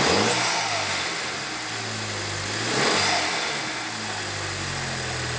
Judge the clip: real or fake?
real